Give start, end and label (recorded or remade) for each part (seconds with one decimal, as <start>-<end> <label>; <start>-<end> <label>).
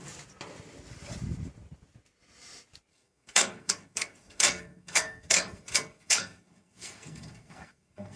0.0-2.9 recorded; 2.9-8.2 remade